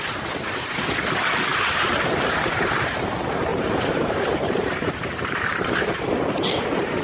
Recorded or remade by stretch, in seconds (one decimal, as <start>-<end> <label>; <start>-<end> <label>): 0.0-1.5 recorded; 1.5-3.1 remade; 3.1-3.5 recorded; 3.5-6.1 remade; 6.1-7.0 recorded

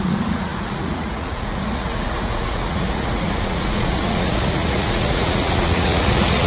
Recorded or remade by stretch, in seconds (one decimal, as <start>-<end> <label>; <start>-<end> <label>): 0.0-6.5 remade

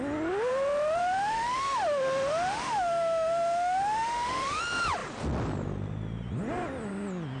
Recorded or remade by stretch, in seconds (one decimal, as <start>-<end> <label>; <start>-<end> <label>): 0.0-1.0 recorded; 1.0-4.6 remade; 4.6-7.4 recorded

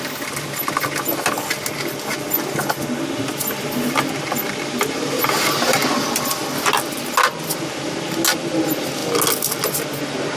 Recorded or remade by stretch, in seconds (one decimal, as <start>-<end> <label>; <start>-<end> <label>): 0.0-10.4 recorded

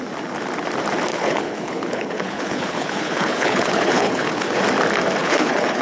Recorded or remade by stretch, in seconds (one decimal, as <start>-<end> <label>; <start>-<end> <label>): 0.0-1.1 recorded; 1.1-4.6 remade; 4.6-5.2 recorded; 5.2-5.8 remade

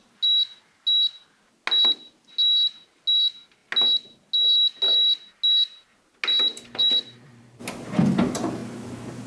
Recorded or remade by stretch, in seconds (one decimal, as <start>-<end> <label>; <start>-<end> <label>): 0.0-6.5 recorded; 6.5-7.6 remade; 7.6-9.3 recorded